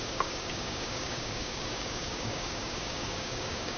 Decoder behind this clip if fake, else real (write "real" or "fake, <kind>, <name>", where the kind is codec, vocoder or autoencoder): fake, codec, DAC